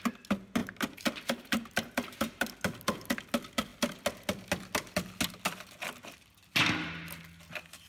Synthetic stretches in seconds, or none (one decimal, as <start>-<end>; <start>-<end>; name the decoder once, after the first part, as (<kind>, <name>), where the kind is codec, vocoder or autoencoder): 0.6-2.4 (vocoder, BigVGAN v2)